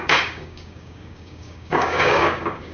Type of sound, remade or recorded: remade